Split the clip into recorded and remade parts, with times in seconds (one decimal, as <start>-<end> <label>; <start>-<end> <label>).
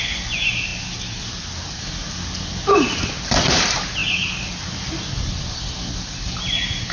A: 0.0-6.9 recorded